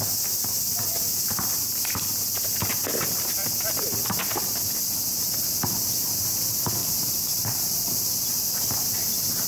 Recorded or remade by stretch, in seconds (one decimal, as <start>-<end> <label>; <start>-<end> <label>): 0.0-6.8 recorded; 6.8-8.6 remade; 8.6-9.5 recorded